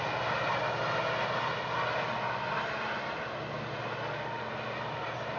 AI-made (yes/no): no